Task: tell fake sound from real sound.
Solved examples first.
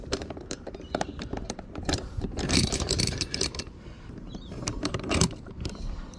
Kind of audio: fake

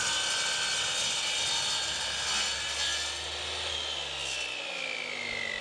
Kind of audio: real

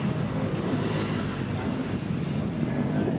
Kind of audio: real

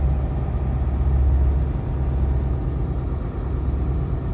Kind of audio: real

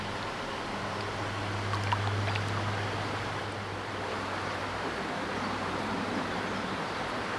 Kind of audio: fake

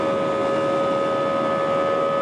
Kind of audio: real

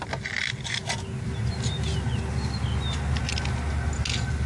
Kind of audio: real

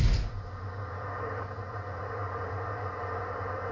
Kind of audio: real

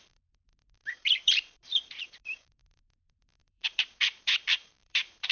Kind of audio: fake